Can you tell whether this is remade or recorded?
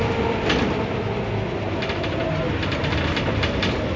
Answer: recorded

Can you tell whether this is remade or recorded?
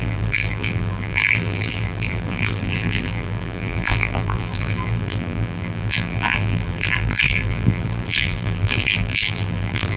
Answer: remade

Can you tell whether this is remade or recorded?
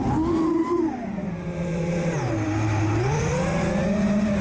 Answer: recorded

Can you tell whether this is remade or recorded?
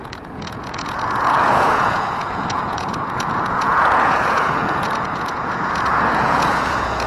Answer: remade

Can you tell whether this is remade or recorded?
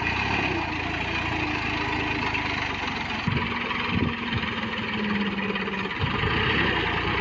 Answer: recorded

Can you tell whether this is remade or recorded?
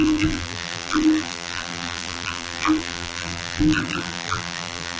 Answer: remade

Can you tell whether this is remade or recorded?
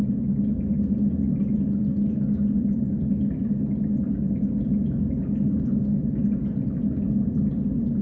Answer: recorded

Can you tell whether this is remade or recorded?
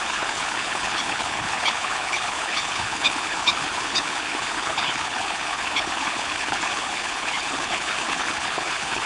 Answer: remade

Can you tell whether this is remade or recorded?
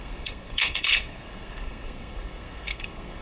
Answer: remade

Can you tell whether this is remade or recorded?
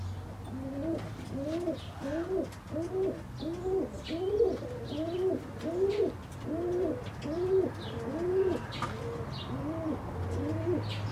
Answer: recorded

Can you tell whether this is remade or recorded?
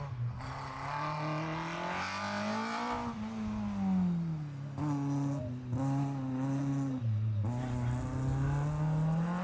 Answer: recorded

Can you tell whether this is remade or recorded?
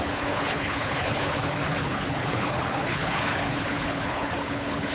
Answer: remade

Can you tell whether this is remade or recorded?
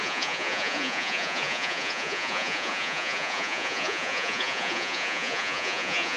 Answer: remade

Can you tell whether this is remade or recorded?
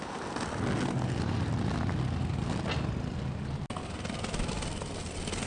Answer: recorded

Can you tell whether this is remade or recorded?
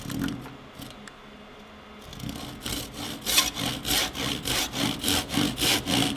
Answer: recorded